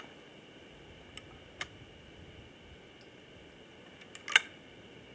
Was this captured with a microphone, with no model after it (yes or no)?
yes